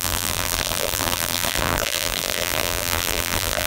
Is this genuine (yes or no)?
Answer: no